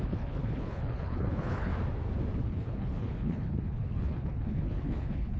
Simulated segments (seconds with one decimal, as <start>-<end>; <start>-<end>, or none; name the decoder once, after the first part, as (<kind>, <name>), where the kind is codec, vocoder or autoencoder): 0.0-1.7 (codec, HILCodec); 2.4-5.4